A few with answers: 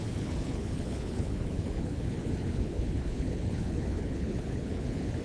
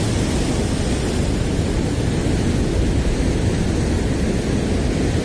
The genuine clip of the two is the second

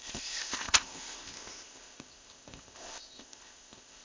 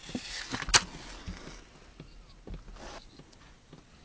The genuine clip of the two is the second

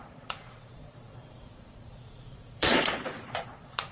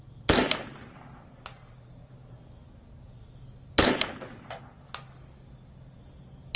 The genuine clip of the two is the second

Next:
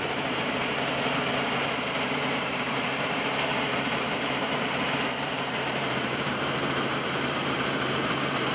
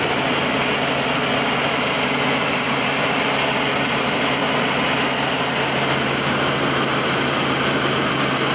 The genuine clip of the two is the second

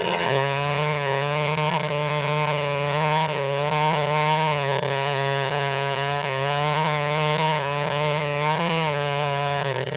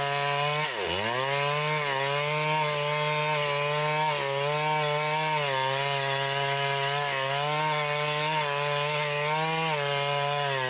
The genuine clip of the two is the second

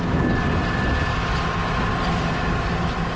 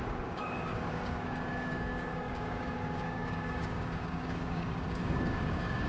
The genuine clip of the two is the first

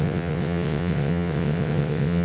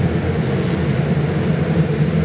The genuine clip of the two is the second